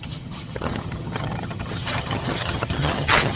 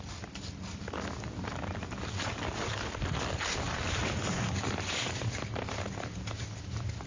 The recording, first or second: second